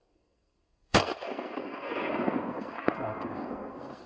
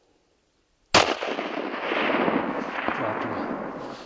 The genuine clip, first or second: second